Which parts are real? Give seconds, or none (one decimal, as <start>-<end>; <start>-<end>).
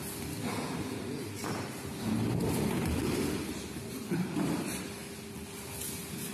5.0-6.3